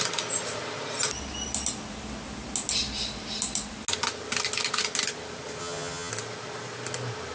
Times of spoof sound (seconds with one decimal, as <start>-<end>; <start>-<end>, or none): 5.6-6.1